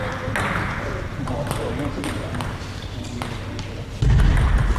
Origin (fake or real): real